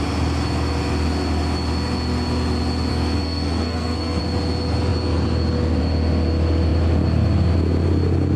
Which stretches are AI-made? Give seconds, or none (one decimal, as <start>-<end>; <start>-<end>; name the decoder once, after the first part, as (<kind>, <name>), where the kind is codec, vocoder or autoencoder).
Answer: 2.9-4.2 (codec, SNAC)